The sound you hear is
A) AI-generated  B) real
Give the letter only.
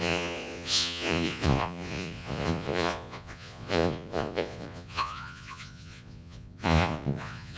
A